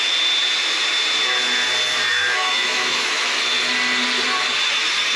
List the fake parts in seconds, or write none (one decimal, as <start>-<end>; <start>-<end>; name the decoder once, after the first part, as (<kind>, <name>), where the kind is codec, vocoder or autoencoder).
2.1-3.2 (autoencoder, DAC-VAE)